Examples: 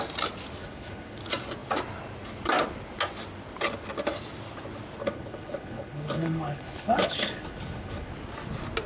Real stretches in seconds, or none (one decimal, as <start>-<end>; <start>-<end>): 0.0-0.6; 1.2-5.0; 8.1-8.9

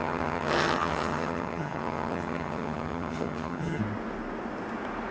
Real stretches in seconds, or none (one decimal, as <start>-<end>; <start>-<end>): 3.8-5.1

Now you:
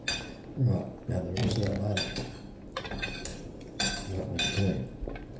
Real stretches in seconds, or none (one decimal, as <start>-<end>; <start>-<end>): 0.0-5.4